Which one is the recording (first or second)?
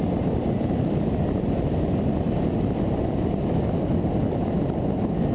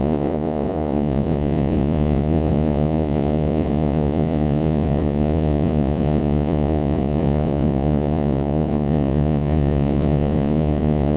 first